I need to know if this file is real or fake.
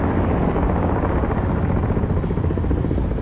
real